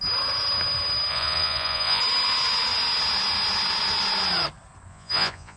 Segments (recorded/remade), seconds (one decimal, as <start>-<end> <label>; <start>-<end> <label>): 0.0-1.1 recorded; 1.1-2.0 remade; 2.0-4.9 recorded; 4.9-5.6 remade